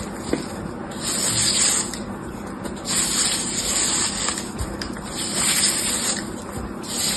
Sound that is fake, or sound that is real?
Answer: real